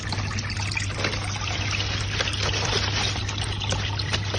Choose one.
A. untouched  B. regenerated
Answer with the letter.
A